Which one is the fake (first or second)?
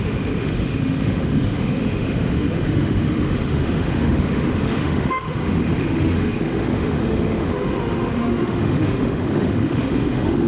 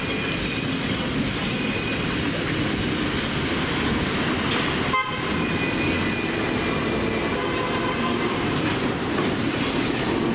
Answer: first